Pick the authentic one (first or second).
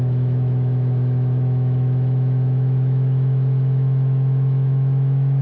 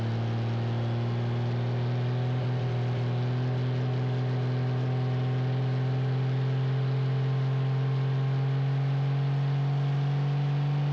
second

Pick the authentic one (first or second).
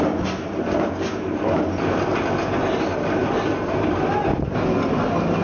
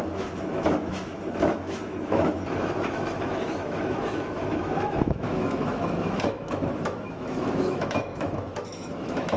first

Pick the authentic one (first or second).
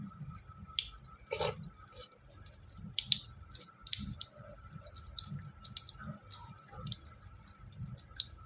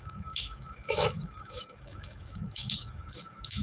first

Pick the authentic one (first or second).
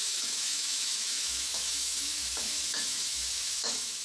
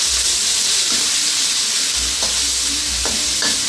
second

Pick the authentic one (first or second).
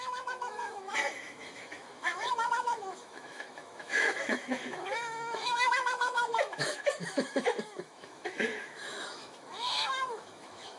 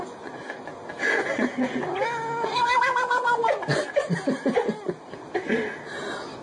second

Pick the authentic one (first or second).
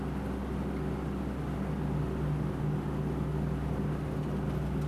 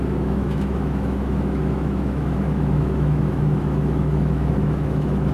first